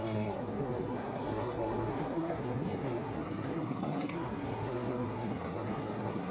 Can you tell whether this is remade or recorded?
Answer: remade